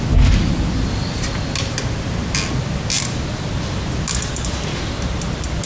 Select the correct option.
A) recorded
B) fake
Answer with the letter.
A